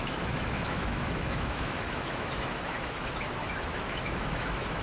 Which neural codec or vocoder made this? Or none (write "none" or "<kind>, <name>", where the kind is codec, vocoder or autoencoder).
autoencoder, DAC-VAE